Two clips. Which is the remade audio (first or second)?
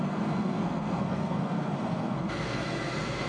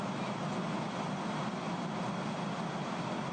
first